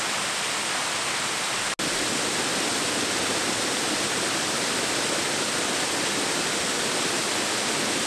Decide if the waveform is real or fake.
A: real